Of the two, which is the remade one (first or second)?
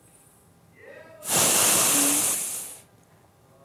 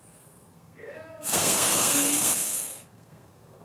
second